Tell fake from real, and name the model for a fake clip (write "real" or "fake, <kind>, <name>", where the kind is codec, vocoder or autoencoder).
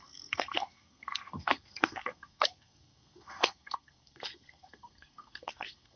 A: fake, codec, SNAC